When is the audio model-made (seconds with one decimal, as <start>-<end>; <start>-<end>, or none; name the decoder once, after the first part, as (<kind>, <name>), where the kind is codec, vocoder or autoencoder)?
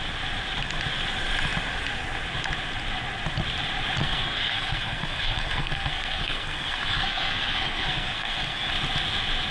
4.0-8.7 (codec, SNAC)